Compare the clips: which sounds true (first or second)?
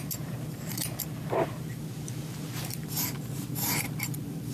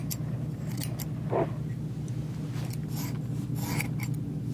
second